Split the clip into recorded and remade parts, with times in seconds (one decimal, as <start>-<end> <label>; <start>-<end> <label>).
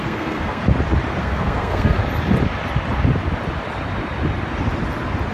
0.0-0.6 remade; 0.6-1.2 recorded; 1.2-2.0 remade; 2.0-5.3 recorded